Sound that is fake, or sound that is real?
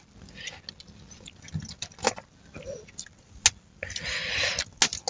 real